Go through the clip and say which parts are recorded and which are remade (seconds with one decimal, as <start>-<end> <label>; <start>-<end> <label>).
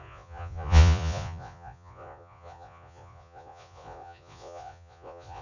0.0-5.4 remade